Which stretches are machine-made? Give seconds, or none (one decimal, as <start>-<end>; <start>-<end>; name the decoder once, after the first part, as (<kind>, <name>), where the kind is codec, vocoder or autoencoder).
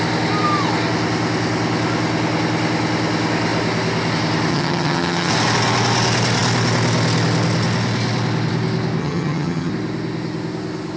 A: 4.5-5.3 (vocoder, HiFi-GAN); 9.0-9.7